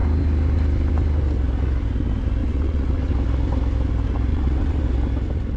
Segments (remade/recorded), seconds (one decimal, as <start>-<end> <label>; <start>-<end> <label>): 0.0-2.4 recorded; 2.4-3.1 remade; 3.1-4.3 recorded; 4.3-4.8 remade; 4.8-5.6 recorded